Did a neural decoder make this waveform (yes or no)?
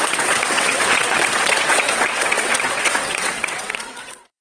yes